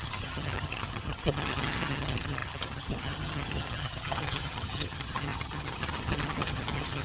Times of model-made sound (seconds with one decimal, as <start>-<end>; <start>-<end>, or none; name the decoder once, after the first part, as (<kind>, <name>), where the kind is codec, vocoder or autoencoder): 0.0-7.0 (vocoder, HiFi-GAN)